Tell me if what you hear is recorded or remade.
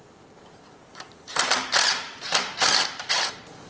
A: remade